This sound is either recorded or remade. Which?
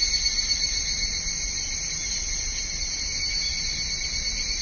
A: recorded